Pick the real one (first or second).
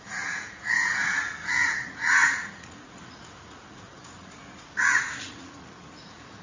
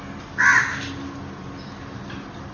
second